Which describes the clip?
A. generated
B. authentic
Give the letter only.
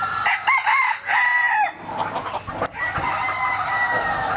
B